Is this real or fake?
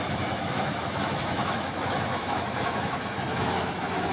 fake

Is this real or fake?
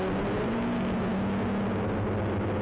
real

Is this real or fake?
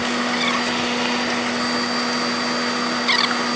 real